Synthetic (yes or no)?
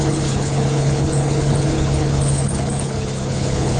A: yes